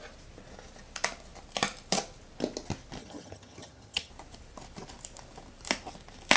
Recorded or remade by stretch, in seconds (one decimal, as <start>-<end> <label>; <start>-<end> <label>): 0.0-3.0 recorded; 3.0-4.1 remade; 4.1-6.4 recorded